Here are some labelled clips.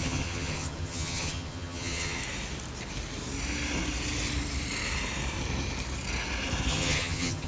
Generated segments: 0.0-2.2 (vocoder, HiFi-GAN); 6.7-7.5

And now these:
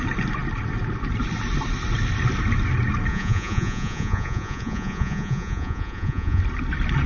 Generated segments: 3.1-6.4 (vocoder, Vocos)

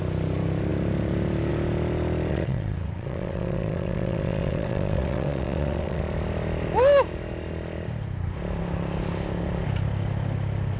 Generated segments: 2.3-6.0 (vocoder, WaveNeXt)

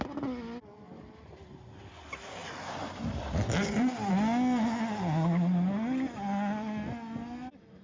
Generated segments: none